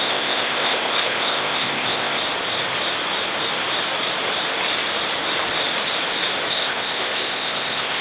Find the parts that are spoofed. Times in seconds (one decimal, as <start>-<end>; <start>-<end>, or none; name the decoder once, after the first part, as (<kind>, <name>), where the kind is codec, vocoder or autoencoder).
0.0-2.2 (codec, ZipCodec); 6.5-8.0